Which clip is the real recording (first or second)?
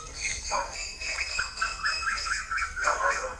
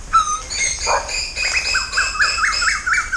second